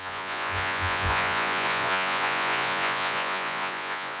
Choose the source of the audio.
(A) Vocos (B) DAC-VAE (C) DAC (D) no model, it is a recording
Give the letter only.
A